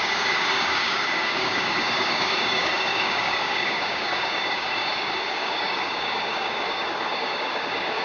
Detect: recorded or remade remade